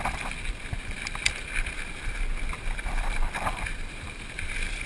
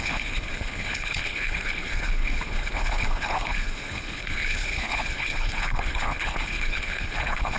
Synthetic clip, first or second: second